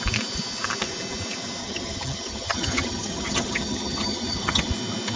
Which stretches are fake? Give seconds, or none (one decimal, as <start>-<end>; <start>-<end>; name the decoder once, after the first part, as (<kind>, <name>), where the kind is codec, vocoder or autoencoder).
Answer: 1.6-4.7 (vocoder, HiFi-GAN)